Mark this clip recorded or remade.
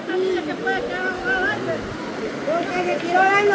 recorded